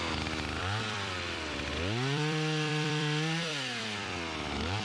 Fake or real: fake